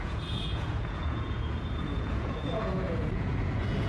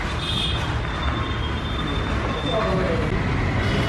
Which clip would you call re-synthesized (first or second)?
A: first